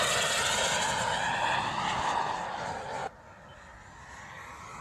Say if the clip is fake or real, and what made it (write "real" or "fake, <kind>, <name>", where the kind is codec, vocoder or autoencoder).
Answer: real